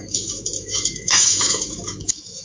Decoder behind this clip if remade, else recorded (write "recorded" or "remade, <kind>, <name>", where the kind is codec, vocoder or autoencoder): remade, autoencoder, DAC-VAE